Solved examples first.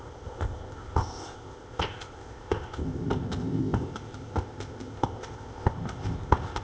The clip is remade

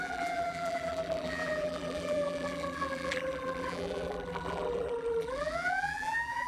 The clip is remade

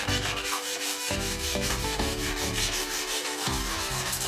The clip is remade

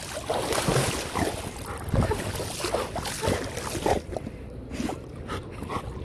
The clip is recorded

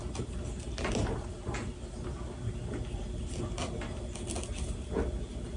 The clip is recorded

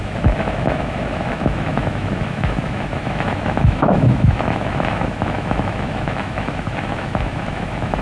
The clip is remade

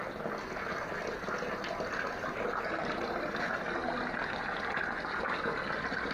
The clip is recorded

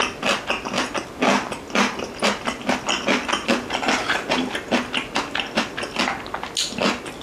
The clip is recorded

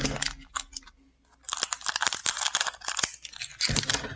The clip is recorded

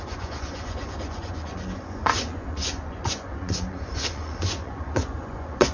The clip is remade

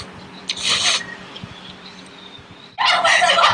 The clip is recorded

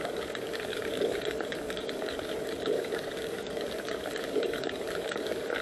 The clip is remade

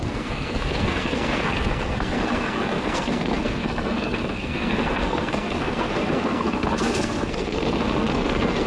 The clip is remade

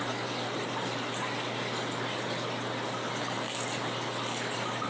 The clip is recorded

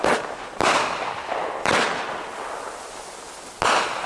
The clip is recorded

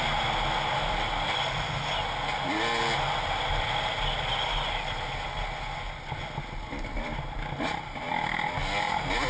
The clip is recorded